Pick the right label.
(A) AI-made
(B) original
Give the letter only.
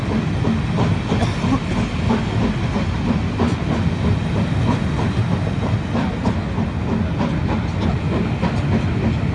B